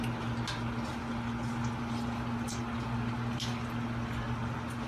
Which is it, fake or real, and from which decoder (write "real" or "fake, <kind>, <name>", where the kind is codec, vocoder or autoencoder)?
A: real